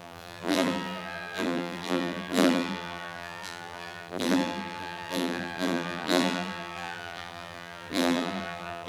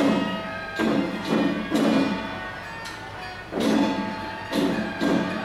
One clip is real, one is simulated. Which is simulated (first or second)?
first